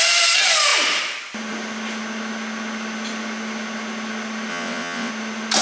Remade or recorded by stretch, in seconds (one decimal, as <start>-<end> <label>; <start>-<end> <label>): 0.0-4.5 recorded; 4.5-5.1 remade; 5.1-5.6 recorded